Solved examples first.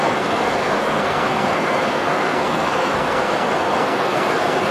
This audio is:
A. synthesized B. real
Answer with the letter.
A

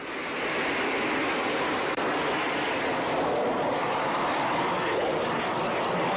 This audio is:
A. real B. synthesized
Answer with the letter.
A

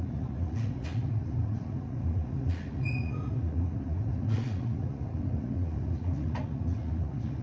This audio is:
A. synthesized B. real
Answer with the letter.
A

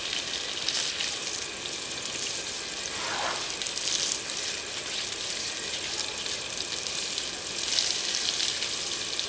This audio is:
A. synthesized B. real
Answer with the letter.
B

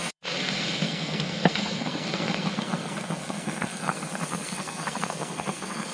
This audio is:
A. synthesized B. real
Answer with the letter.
A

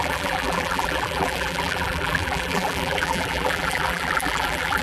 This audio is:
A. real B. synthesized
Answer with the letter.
B